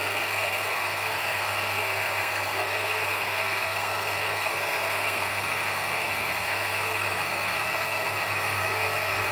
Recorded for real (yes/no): no